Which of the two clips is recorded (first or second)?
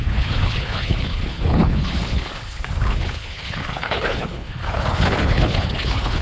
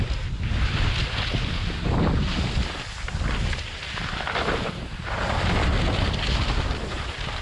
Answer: second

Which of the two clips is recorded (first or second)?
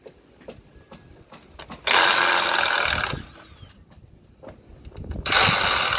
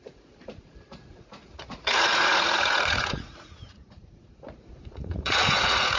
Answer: first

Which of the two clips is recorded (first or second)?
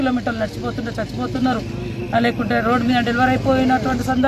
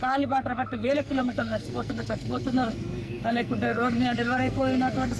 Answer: first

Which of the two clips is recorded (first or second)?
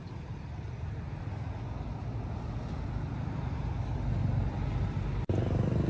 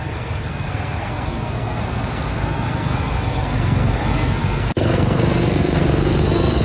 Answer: first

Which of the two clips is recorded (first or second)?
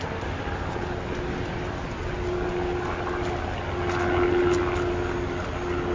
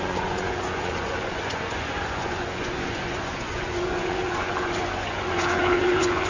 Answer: first